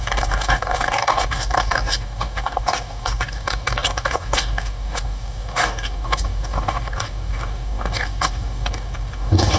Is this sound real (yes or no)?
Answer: no